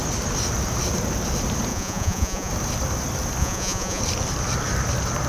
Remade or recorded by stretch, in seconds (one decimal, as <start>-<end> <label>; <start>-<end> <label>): 0.0-1.7 recorded; 1.7-2.5 remade; 2.5-3.4 recorded; 3.4-4.0 remade; 4.0-5.3 recorded

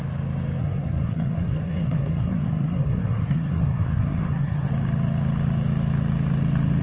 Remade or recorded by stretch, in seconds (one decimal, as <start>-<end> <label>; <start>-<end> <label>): 0.0-0.6 recorded; 0.6-4.7 remade; 4.7-6.8 recorded

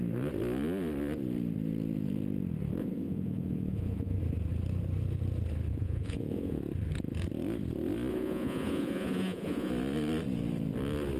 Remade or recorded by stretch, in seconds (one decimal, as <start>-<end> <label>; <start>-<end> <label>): 0.0-2.8 recorded; 2.8-4.2 remade; 4.2-5.7 recorded; 5.7-6.6 remade; 6.6-8.1 recorded; 8.1-9.7 remade; 9.7-11.2 recorded

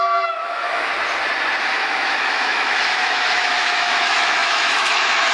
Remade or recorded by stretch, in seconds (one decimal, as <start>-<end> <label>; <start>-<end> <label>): 0.0-0.9 remade; 0.9-1.6 recorded; 1.6-5.3 remade

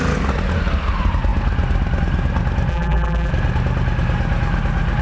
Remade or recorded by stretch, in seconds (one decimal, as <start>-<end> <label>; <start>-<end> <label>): 0.0-2.7 recorded; 2.7-3.3 remade; 3.3-5.0 recorded

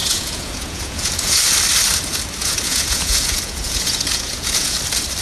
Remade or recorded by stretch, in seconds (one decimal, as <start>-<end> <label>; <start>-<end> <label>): 0.0-1.4 remade; 1.4-2.4 recorded; 2.4-4.8 remade; 4.8-5.2 recorded

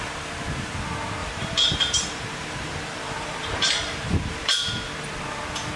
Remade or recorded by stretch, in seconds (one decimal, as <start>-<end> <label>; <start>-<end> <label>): 0.0-1.2 recorded; 1.2-4.7 remade; 4.7-5.8 recorded

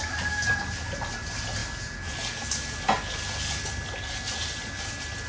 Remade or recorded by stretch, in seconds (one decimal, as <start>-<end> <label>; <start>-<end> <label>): 0.0-5.3 recorded